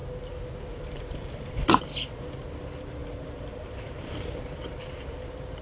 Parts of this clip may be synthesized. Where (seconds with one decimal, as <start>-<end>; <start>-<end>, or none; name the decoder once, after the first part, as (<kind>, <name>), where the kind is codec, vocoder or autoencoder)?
0.7-1.9 (vocoder, BigVGAN v2); 2.6-5.6